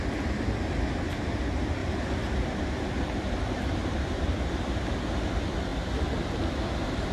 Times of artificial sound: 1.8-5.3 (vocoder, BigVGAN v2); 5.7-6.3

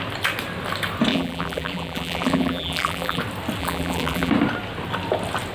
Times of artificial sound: 1.1-3.2 (vocoder, BigVGAN v2); 3.6-4.3

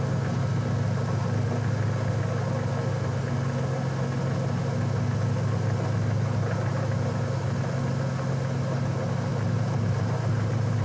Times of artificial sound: 9.3-10.8 (vocoder, BigVGAN v2)

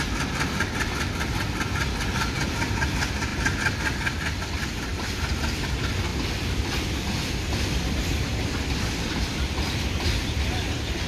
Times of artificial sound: 0.0-11.1 (vocoder, BigVGAN v2)

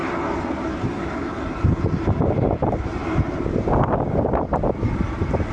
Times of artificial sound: 0.9-3.0 (vocoder, BigVGAN v2); 4.5-5.5

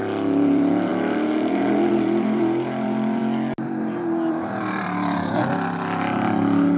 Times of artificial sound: 0.0-0.9 (vocoder, BigVGAN v2); 1.9-3.2; 4.3-6.8